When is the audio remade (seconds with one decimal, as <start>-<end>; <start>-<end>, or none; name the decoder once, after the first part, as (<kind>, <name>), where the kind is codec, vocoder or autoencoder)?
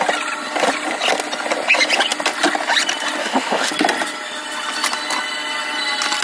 3.2-3.7 (autoencoder, DAC-VAE)